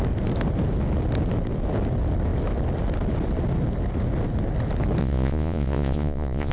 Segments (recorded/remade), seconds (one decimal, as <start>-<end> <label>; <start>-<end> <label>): 0.0-5.0 recorded; 5.0-6.5 remade